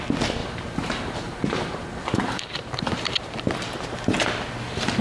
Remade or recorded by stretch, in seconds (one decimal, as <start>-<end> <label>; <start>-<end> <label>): 0.0-0.4 recorded; 0.4-3.4 remade; 3.4-5.0 recorded